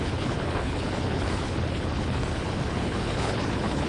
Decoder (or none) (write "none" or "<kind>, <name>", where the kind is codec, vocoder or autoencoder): codec, HILCodec